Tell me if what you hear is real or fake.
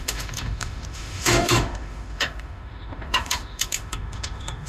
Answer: fake